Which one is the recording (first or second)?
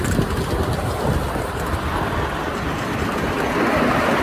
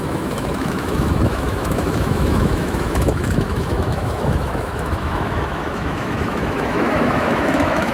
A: first